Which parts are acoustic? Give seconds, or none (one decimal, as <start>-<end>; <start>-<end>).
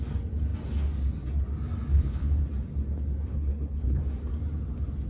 0.0-1.9; 2.4-3.3; 4.0-5.1